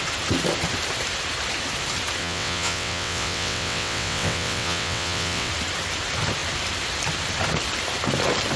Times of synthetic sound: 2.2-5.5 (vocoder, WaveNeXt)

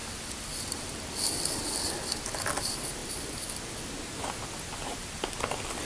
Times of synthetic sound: none

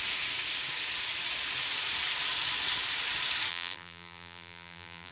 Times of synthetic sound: 3.5-5.1 (vocoder, BigVGAN v2)

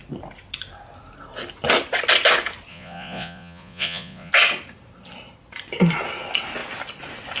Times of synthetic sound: 2.7-4.3 (vocoder, Vocos)